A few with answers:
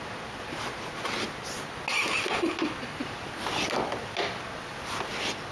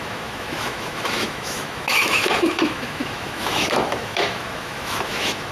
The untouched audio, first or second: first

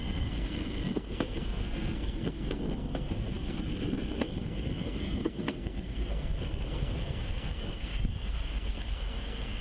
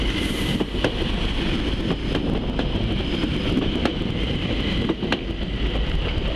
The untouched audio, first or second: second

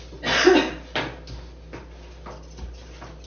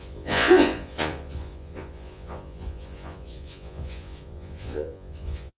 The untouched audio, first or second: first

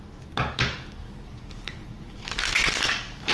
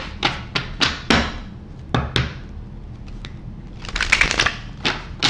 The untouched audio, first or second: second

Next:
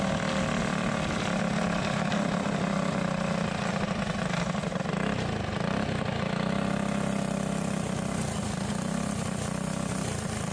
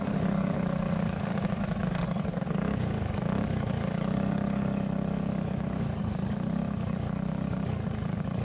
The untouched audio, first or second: first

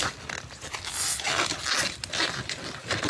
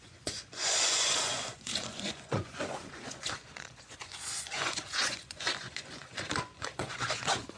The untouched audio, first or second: first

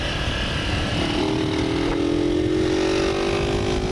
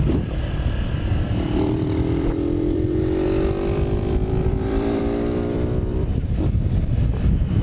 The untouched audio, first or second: first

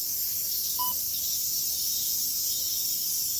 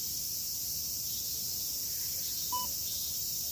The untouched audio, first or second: second